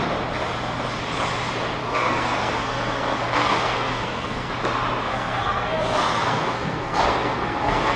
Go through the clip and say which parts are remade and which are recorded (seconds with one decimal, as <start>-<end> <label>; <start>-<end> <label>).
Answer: 0.0-1.8 recorded; 1.8-4.5 remade; 4.5-5.0 recorded; 5.0-8.0 remade